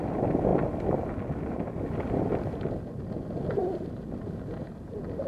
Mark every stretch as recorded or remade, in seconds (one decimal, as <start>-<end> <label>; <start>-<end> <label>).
0.0-5.3 recorded